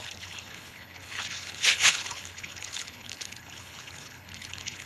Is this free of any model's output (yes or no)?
no